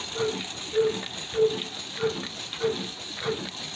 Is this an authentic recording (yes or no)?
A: yes